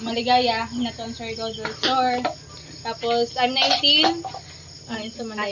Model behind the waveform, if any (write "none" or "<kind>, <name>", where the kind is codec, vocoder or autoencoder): none